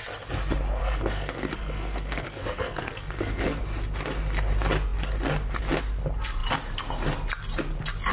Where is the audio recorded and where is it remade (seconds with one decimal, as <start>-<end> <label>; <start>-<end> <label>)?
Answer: 0.0-0.8 recorded; 0.8-3.6 remade; 3.6-8.1 recorded